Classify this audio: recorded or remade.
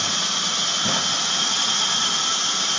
recorded